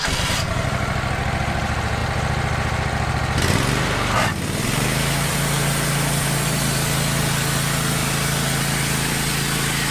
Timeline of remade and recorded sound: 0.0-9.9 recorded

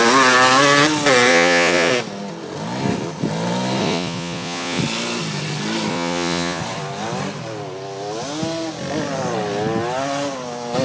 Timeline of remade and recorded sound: 0.0-1.3 recorded; 1.3-1.9 remade; 1.9-3.8 recorded; 3.8-4.8 remade; 4.8-5.9 recorded; 5.9-6.6 remade; 6.6-10.8 recorded